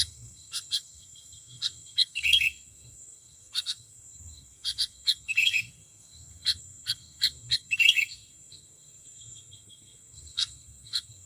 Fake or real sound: fake